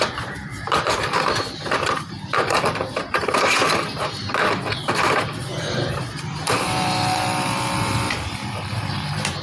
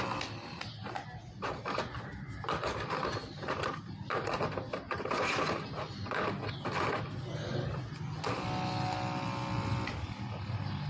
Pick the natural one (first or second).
second